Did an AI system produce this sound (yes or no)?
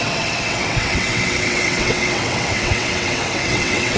yes